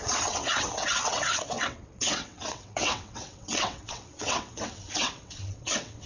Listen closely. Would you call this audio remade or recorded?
remade